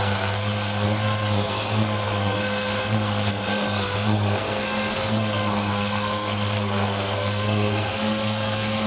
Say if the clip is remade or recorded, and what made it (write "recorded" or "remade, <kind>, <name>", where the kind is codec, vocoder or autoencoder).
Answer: remade, codec, SNAC